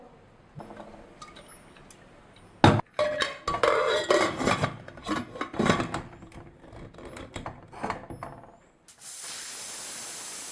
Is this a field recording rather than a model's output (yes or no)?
yes